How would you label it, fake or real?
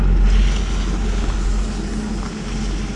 real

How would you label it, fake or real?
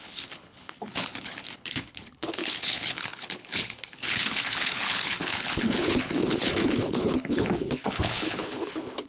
fake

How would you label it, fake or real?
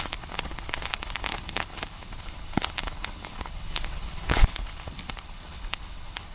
fake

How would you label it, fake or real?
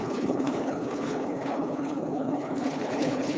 fake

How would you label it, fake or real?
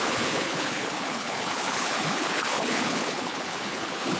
fake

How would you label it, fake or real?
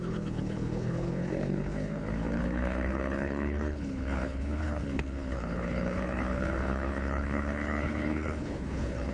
fake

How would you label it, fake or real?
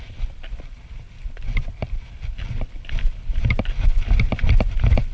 real